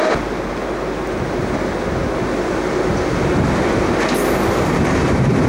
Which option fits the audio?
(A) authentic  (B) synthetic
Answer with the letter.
A